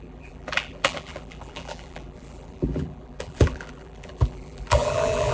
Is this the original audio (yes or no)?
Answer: no